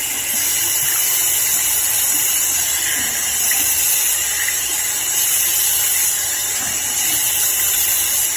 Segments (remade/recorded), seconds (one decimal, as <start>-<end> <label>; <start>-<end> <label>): 0.0-8.4 recorded